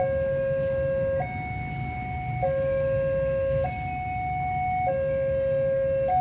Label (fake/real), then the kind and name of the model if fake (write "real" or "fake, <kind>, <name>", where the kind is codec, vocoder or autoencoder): real